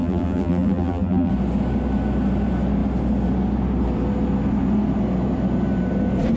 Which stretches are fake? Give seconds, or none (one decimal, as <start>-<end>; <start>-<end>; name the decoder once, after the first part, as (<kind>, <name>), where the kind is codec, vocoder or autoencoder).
0.0-1.3 (vocoder, BigVGAN v2)